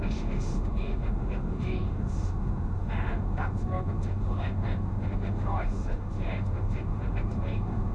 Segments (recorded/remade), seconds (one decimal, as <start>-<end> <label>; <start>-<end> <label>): 0.0-7.9 remade

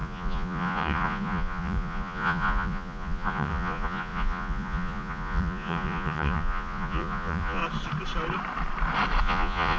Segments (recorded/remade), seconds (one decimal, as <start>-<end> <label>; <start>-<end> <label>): 0.0-7.6 remade; 7.6-9.2 recorded; 9.2-9.8 remade

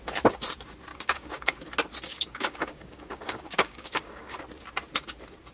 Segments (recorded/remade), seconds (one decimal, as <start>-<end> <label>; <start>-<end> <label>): 0.0-0.9 recorded; 0.9-1.7 remade; 1.7-2.1 recorded; 2.1-4.4 remade; 4.4-5.5 recorded

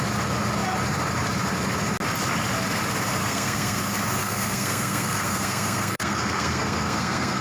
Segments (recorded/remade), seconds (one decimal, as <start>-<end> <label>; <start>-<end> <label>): 0.0-3.2 recorded; 3.2-3.8 remade; 3.8-4.2 recorded; 4.2-7.4 remade

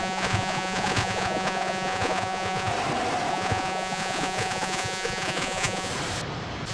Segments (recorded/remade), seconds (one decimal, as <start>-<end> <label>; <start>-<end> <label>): 0.0-2.7 remade; 2.7-3.3 recorded; 3.3-5.9 remade; 5.9-6.7 recorded

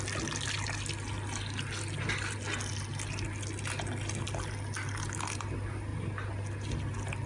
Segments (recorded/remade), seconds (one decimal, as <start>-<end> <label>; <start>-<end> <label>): 0.0-7.3 recorded

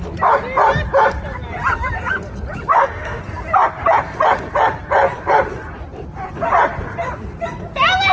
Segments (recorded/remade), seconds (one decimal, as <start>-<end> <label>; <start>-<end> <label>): 0.0-2.7 recorded; 2.7-3.2 remade; 3.2-8.1 recorded